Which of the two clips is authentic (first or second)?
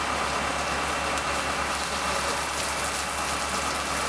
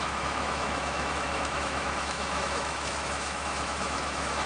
first